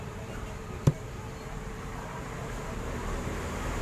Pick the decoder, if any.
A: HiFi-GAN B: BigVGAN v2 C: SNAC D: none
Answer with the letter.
B